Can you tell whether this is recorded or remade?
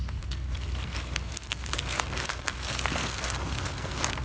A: remade